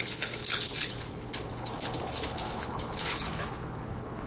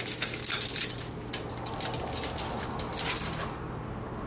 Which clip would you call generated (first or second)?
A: first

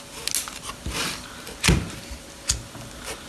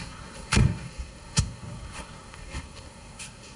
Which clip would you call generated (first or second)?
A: second